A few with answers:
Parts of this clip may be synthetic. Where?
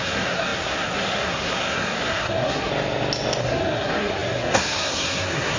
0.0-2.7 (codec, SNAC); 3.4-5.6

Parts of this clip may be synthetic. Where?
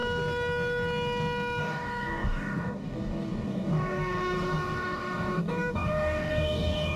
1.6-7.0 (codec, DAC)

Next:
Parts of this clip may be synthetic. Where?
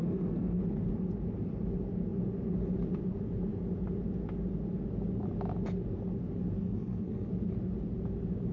0.0-0.6 (codec, SNAC); 6.6-7.3